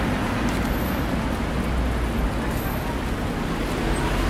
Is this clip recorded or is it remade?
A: recorded